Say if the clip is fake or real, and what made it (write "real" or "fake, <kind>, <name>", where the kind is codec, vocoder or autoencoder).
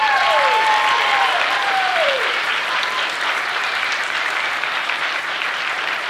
fake, vocoder, BigVGAN v2